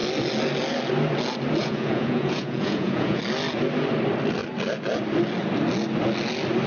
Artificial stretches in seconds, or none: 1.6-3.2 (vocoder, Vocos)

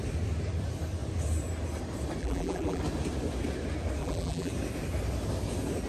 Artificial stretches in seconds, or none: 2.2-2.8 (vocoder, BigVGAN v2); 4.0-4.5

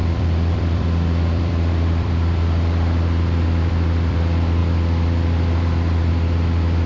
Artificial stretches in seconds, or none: 0.0-6.9 (vocoder, BigVGAN v2)

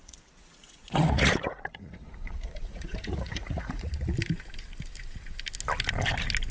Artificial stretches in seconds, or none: 0.0-3.9 (vocoder, Vocos)

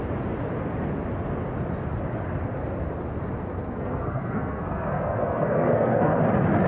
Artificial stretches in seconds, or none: 3.6-6.2 (codec, SNAC)

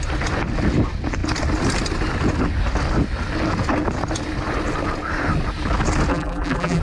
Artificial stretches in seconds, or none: 6.1-6.8 (vocoder, BigVGAN v2)

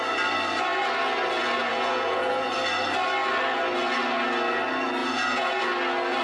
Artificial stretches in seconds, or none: 1.7-2.5 (vocoder, Vocos); 5.0-5.6